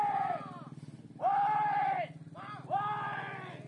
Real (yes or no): yes